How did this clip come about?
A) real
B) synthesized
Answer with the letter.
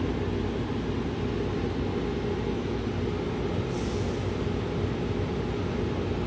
A